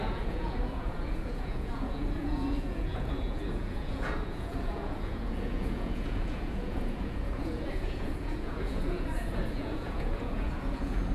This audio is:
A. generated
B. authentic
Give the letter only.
A